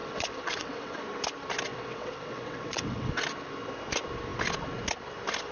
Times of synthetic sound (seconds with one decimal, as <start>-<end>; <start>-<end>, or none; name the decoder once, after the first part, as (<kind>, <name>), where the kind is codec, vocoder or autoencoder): 0.0-1.0 (vocoder, WaveNeXt); 1.7-3.2